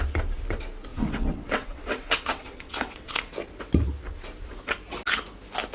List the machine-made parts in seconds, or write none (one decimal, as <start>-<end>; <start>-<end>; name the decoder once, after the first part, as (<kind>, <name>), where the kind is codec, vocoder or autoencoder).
0.9-3.3 (vocoder, WaveNeXt)